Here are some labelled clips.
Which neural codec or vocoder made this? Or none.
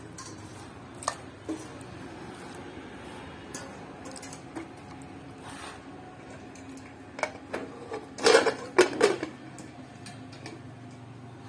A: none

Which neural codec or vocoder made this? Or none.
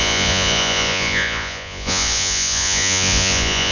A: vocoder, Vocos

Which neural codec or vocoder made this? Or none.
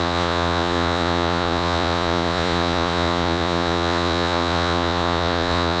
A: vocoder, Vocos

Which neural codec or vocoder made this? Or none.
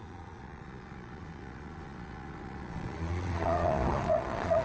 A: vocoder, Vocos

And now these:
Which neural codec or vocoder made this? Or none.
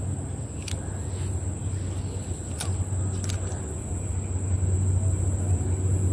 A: none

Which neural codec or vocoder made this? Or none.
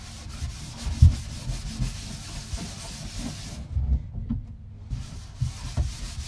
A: none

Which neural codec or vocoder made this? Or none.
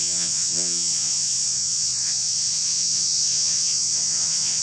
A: vocoder, Vocos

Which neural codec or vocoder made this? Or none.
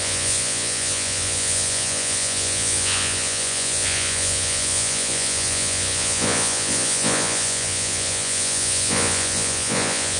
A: vocoder, Vocos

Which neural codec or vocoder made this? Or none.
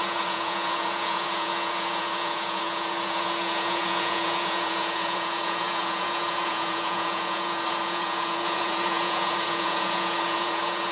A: vocoder, Vocos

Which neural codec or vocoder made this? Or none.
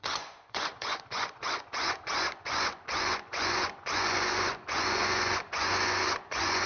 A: vocoder, Vocos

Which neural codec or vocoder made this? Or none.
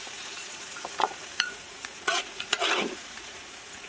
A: vocoder, Vocos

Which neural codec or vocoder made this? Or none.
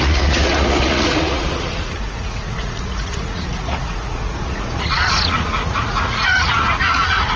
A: vocoder, Vocos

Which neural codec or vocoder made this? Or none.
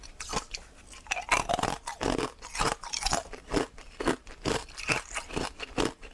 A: none